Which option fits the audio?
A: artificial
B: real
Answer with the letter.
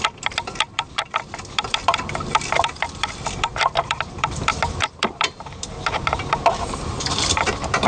A